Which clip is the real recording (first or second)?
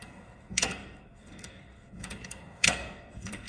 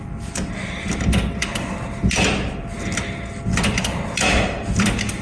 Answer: second